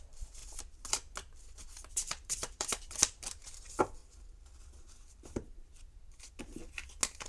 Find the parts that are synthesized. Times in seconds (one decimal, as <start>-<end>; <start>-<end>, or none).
0.0-0.4; 1.9-4.0; 4.6-6.6